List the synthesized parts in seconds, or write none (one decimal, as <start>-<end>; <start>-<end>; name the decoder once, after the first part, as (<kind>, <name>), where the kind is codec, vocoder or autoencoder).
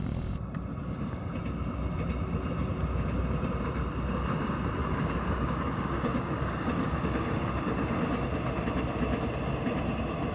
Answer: 0.8-1.3 (codec, DAC); 4.8-7.5